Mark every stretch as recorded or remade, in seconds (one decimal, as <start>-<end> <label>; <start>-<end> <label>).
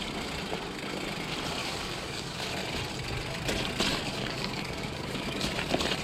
0.0-1.6 recorded; 1.6-2.5 remade; 2.5-3.9 recorded; 3.9-5.4 remade; 5.4-6.0 recorded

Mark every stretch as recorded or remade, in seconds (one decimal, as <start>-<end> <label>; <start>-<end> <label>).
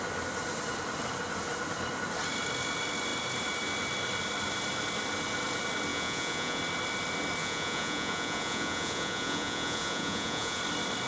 0.0-5.9 recorded; 5.9-6.6 remade; 6.6-7.4 recorded; 7.4-10.6 remade; 10.6-11.1 recorded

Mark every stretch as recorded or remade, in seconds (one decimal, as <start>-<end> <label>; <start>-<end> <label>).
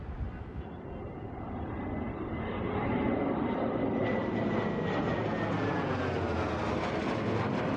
0.0-7.8 recorded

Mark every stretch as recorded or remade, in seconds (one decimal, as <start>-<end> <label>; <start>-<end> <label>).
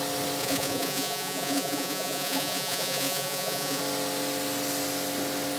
0.0-0.4 recorded; 0.4-3.8 remade; 3.8-5.6 recorded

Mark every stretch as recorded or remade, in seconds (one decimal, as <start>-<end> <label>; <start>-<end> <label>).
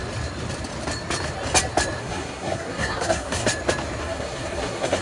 0.0-2.0 recorded; 2.0-3.4 remade; 3.4-4.0 recorded; 4.0-5.0 remade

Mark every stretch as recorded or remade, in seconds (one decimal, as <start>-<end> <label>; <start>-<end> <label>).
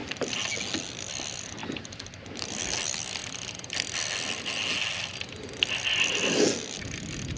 0.0-0.5 remade; 0.5-7.4 recorded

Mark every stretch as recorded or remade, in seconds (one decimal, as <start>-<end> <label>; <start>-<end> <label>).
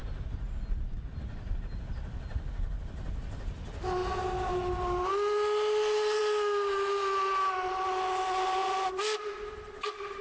0.0-10.2 recorded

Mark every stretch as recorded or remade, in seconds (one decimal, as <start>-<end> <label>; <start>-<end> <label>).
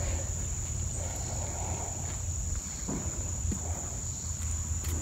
0.0-5.0 recorded